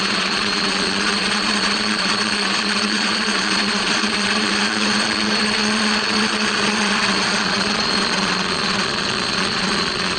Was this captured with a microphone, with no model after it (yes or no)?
no